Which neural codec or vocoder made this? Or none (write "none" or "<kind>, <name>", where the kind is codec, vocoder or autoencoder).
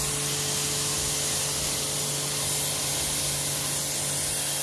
none